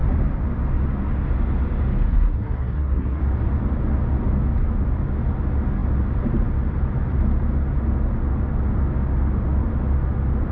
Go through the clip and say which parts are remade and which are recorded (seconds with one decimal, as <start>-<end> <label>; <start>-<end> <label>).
0.0-2.1 recorded; 2.1-3.2 remade; 3.2-10.5 recorded